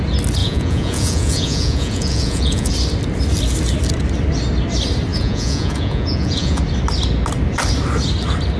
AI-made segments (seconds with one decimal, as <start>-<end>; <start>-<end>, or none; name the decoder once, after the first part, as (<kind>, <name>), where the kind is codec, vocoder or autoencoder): 0.4-2.7 (vocoder, Vocos); 5.1-6.6